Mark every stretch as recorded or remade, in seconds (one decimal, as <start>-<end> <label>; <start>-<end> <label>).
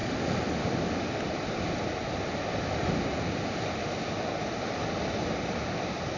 0.0-6.2 recorded